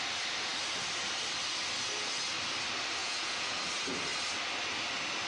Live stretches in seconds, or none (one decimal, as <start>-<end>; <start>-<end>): 0.0-3.0; 3.6-5.3